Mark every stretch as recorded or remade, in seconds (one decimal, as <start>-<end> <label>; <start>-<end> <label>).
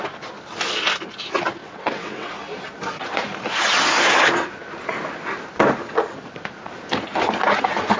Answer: 0.0-1.6 recorded; 1.6-2.3 remade; 2.3-8.0 recorded